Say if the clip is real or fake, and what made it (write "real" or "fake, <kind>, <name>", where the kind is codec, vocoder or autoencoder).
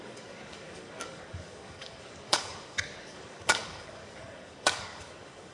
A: fake, codec, DAC